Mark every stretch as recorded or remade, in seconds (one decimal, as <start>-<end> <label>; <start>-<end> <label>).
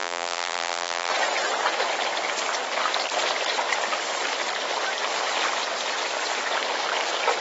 0.0-1.1 remade; 1.1-7.4 recorded